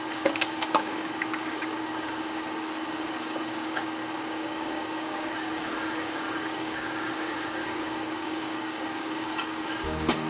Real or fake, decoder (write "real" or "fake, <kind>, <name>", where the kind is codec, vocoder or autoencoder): fake, codec, DAC